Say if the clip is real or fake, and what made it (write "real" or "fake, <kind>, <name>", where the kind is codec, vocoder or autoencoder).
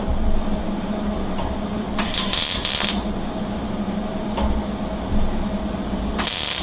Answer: real